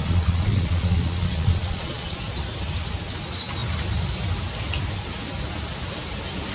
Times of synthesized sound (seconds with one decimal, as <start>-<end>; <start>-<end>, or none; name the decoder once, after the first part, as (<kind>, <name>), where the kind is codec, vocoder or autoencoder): 0.0-2.2 (vocoder, Vocos)